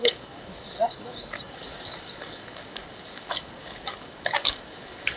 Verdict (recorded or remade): remade